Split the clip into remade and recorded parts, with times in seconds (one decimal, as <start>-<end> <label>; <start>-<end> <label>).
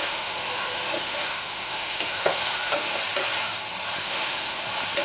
0.0-3.0 remade; 3.0-4.0 recorded; 4.0-4.6 remade; 4.6-5.0 recorded